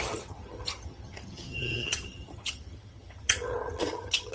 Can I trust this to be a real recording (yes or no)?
no